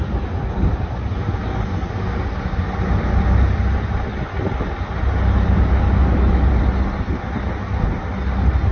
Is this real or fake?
real